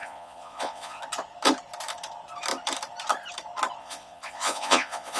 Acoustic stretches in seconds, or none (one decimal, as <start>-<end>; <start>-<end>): 1.0-3.8